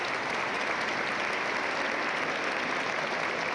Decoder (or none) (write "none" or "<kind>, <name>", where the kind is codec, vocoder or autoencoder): none